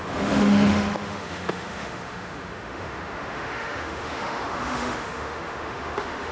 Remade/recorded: remade